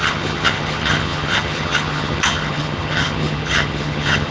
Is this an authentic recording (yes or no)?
no